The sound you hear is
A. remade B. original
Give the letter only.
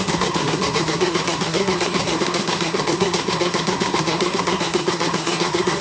A